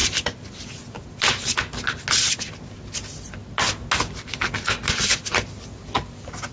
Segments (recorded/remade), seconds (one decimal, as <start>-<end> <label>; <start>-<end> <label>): 0.0-6.5 recorded